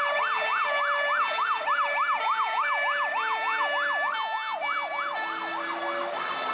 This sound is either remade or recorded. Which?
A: recorded